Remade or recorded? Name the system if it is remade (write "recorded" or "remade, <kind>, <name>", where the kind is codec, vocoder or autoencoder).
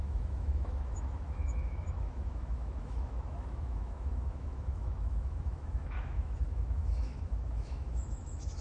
remade, autoencoder, DAC-VAE